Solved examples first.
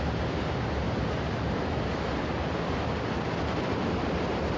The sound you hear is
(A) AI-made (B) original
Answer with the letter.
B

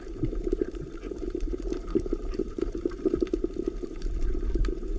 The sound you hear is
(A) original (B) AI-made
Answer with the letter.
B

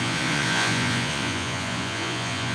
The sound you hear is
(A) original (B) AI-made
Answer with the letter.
B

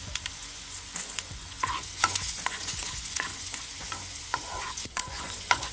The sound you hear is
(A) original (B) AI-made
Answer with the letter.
B